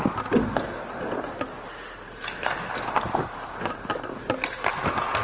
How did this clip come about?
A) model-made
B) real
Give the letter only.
B